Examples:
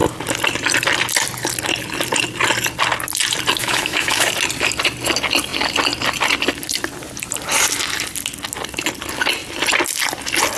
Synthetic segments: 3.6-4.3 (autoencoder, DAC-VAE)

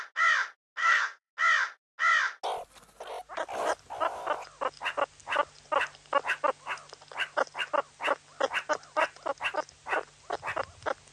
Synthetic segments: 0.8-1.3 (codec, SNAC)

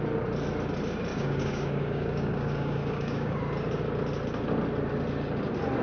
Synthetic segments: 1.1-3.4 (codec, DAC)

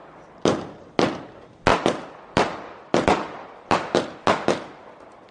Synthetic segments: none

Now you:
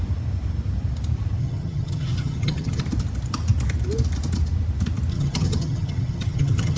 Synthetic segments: 1.4-2.8 (vocoder, HiFi-GAN); 5.1-6.8

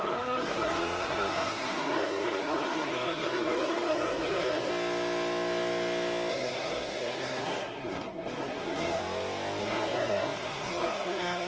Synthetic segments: 0.0-4.7 (codec, SNAC); 6.3-9.0; 9.6-11.5